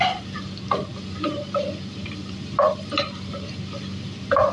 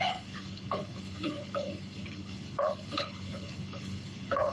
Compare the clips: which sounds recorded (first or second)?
first